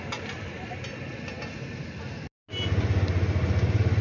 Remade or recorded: recorded